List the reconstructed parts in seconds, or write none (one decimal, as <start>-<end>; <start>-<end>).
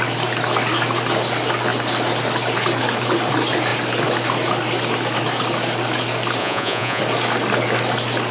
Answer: 6.4-7.0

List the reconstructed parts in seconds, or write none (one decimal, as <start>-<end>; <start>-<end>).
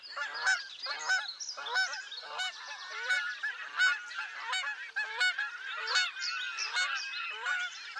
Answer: none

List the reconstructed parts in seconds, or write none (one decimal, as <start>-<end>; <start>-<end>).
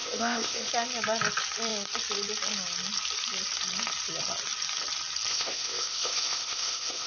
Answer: 0.0-0.7; 5.3-7.1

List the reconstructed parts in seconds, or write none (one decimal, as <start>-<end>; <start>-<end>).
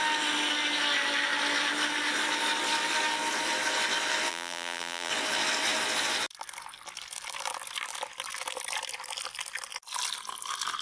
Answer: 4.3-5.1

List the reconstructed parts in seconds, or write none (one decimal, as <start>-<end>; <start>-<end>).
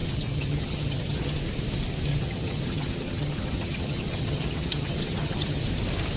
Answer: 0.0-1.4; 2.1-5.6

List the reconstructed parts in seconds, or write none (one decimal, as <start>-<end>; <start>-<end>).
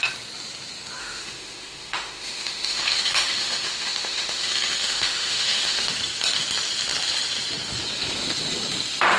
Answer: 1.0-5.9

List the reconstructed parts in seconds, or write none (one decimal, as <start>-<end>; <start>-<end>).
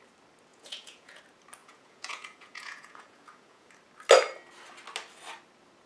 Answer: 0.5-1.2; 1.6-3.7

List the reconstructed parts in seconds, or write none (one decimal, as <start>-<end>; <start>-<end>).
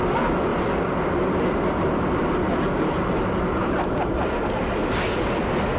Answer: none